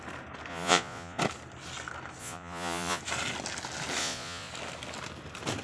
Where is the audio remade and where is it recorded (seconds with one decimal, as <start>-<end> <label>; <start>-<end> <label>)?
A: 0.0-0.5 recorded; 0.5-1.2 remade; 1.2-2.2 recorded; 2.2-3.0 remade; 3.0-4.0 recorded; 4.0-4.5 remade; 4.5-5.6 recorded